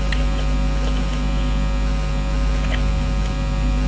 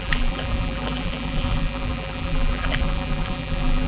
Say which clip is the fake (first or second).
second